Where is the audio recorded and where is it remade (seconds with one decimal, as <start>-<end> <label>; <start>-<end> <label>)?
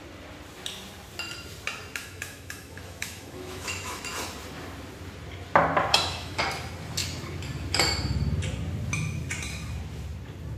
0.0-2.0 recorded; 2.0-4.0 remade; 4.0-5.9 recorded; 5.9-6.4 remade; 6.4-10.6 recorded